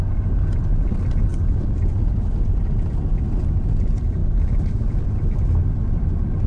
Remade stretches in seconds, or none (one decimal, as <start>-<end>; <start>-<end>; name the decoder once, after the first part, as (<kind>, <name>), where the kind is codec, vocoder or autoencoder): none